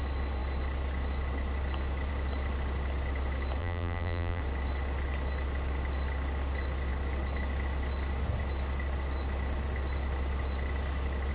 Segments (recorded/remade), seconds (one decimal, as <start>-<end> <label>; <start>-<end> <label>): 0.0-3.6 recorded; 3.6-4.4 remade; 4.4-11.3 recorded